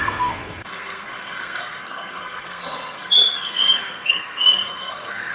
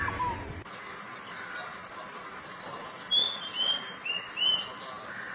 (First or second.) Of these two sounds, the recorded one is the second